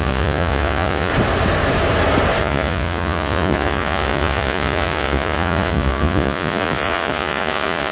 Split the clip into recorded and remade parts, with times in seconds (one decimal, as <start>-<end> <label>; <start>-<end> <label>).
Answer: 0.0-1.1 remade; 1.1-2.4 recorded; 2.4-7.9 remade